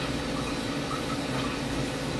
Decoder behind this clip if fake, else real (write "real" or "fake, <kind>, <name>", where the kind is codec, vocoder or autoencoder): fake, vocoder, BigVGAN v2